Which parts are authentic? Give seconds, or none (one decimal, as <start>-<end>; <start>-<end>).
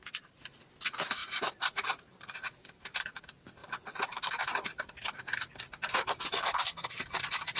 0.6-1.2; 3.2-3.6; 4.3-7.6